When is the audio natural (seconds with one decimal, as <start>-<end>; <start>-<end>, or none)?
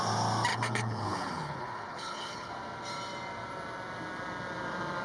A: 0.0-0.5; 2.5-5.0